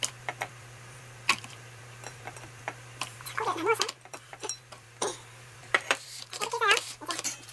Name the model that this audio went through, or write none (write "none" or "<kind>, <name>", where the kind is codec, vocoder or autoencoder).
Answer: vocoder, BigVGAN v2